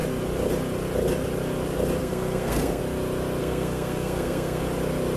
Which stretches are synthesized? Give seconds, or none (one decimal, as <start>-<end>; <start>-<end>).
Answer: 2.0-2.8; 3.4-4.6